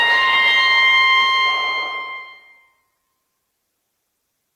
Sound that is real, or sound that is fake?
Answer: fake